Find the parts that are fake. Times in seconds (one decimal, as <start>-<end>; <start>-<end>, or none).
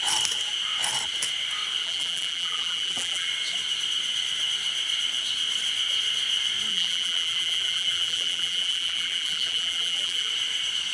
1.8-3.3; 6.7-10.3